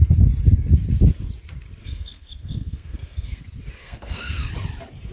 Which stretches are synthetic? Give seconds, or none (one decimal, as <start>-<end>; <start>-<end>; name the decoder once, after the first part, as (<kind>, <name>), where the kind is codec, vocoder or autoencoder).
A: 1.8-3.4 (codec, SNAC); 3.8-4.5